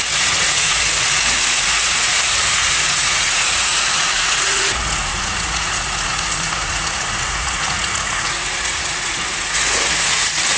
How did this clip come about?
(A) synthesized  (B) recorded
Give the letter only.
A